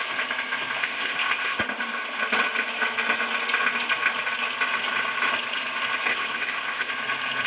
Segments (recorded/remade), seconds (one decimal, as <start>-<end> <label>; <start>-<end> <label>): 0.0-0.8 recorded; 0.8-1.6 remade; 1.6-6.1 recorded; 6.1-6.9 remade; 6.9-7.5 recorded